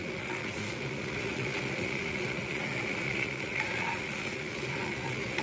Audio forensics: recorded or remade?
remade